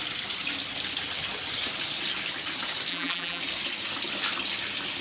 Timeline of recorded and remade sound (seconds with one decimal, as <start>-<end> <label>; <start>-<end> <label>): 0.0-2.9 recorded; 2.9-3.4 remade; 3.4-5.0 recorded